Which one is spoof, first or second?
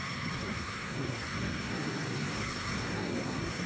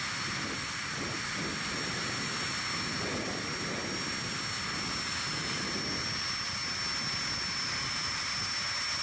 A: first